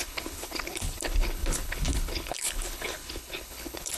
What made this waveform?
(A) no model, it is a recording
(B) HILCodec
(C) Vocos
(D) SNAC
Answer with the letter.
B